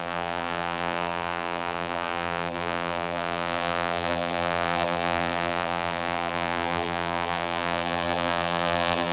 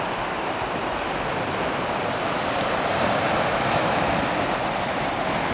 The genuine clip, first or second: second